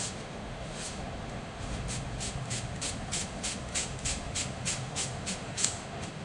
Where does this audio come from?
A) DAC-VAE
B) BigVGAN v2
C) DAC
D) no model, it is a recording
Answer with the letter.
A